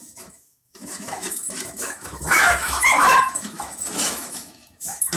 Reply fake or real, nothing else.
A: fake